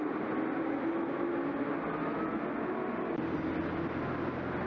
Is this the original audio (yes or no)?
yes